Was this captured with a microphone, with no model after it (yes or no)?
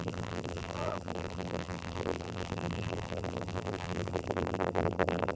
no